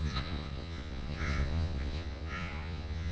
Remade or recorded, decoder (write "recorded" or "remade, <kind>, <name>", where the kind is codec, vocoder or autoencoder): remade, vocoder, Vocos